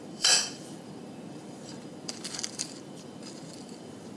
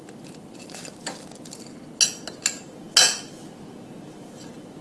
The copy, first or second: first